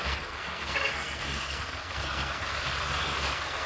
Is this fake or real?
fake